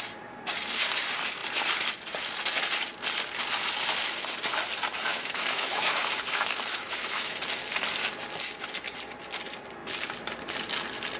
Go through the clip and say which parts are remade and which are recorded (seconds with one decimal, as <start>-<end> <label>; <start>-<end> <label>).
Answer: 0.0-5.1 recorded; 5.1-7.4 remade; 7.4-11.2 recorded